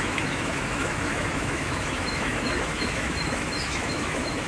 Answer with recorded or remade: remade